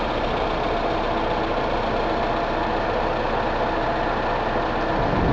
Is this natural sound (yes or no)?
yes